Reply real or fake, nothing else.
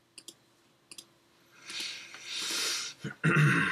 real